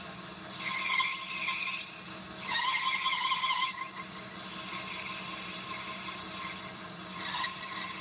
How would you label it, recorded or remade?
recorded